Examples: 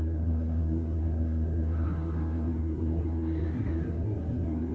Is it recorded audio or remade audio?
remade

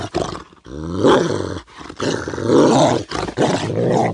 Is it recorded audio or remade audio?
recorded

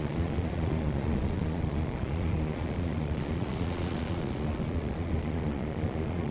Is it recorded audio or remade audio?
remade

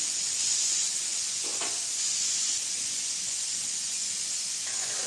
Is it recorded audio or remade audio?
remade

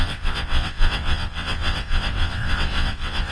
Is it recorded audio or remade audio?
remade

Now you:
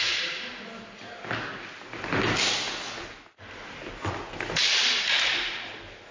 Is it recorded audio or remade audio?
recorded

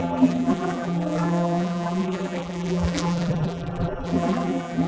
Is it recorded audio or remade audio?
remade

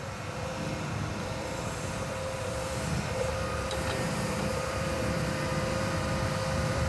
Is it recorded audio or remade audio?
remade